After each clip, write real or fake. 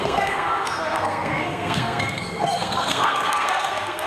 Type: fake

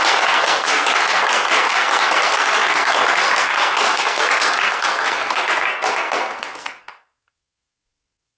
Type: fake